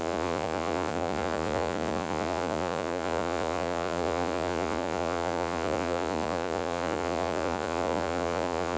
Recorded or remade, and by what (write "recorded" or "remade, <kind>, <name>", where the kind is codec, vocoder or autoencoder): remade, vocoder, Vocos